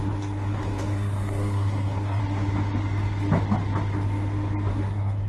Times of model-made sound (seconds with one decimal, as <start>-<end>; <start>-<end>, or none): 0.0-2.2; 4.7-5.3